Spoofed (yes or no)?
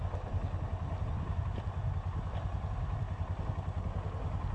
no